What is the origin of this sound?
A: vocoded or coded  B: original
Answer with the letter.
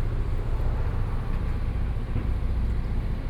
B